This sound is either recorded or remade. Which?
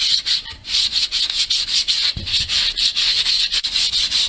remade